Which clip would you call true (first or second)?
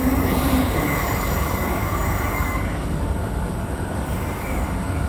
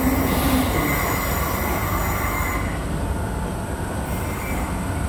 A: second